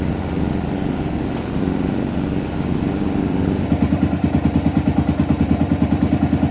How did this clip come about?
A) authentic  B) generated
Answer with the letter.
A